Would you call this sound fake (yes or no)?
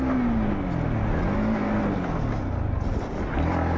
no